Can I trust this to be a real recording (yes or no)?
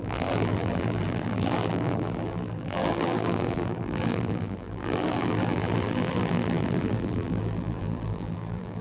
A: no